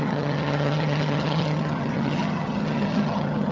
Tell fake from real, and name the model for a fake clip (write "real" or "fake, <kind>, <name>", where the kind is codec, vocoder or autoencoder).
fake, vocoder, HiFi-GAN